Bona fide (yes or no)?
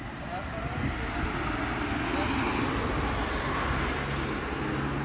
yes